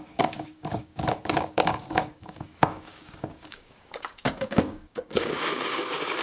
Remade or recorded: remade